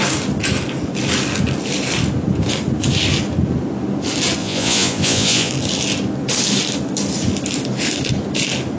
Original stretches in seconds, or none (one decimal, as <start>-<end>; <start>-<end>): 0.0-4.4; 5.5-8.8